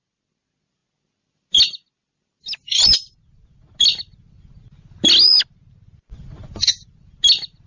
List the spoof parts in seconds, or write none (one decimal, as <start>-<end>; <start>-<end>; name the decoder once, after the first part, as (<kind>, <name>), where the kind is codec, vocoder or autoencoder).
none